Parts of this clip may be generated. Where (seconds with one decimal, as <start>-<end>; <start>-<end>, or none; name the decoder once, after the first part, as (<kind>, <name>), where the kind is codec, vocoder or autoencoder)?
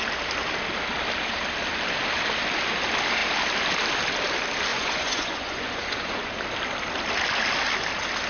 4.7-6.3 (vocoder, Vocos)